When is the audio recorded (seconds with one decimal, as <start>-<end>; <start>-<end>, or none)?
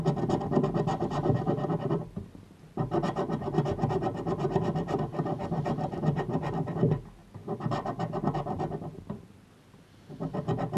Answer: 0.0-10.8